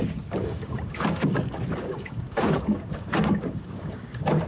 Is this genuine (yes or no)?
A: no